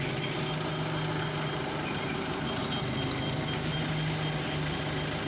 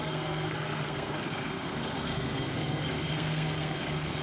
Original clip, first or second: first